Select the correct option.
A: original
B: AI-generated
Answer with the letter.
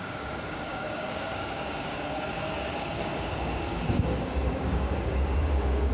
B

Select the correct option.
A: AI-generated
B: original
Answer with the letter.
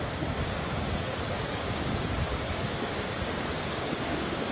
A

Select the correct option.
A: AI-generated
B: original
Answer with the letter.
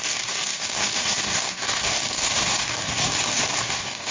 A